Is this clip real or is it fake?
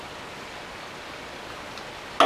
real